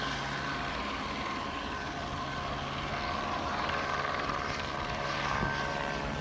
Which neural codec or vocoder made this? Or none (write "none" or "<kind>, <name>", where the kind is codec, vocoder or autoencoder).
none